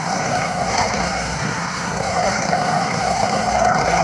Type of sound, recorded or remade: remade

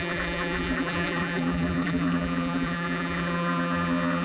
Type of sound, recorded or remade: remade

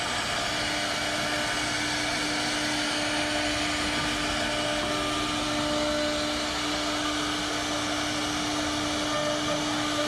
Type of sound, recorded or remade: recorded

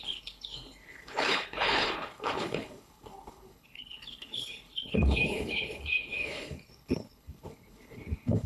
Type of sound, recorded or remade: remade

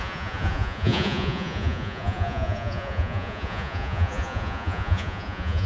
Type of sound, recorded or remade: remade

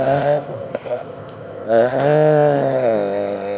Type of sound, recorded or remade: remade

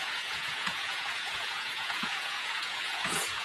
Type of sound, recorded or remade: remade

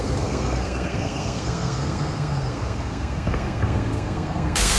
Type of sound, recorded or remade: remade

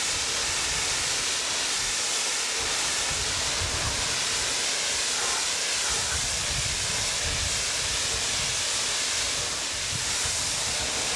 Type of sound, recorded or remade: recorded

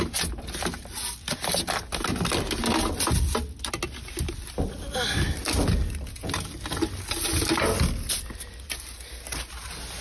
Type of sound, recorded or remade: recorded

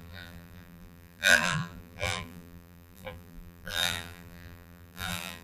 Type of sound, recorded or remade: remade